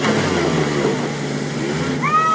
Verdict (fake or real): real